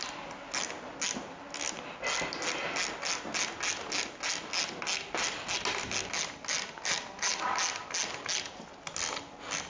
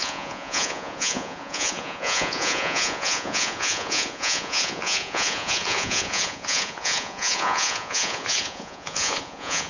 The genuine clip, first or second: first